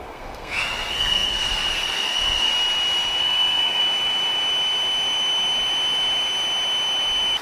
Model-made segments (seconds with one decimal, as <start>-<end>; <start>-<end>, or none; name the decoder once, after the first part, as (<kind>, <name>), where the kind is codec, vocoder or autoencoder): 0.0-2.5 (codec, SNAC); 3.2-3.8